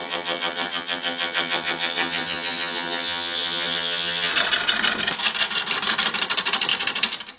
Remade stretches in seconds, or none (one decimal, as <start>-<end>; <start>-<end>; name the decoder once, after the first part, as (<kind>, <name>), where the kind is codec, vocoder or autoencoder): 0.0-4.3 (vocoder, HiFi-GAN)